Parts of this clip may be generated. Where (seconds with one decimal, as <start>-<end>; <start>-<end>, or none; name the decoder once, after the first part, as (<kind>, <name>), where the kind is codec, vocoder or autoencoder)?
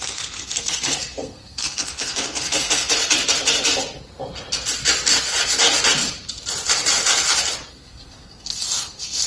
0.0-3.0 (codec, SNAC); 7.7-9.3